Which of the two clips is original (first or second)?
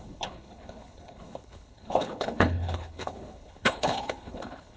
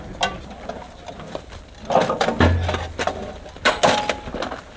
second